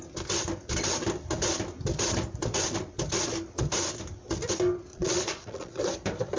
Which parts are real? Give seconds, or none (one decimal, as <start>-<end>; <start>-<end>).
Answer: 0.0-4.9; 5.8-6.4